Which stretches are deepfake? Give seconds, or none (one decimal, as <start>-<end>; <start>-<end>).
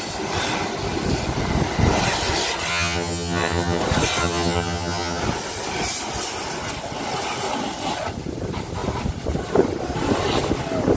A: 2.7-3.8; 4.2-5.2